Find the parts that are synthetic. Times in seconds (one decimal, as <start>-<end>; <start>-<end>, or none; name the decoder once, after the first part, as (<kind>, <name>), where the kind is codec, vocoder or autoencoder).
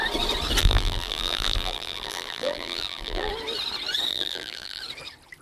0.6-3.3 (vocoder, BigVGAN v2); 4.1-4.8